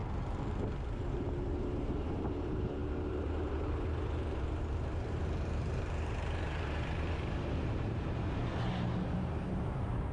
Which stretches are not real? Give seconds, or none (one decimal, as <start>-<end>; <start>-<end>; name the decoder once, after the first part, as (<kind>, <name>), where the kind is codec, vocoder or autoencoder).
1.1-10.1 (vocoder, BigVGAN v2)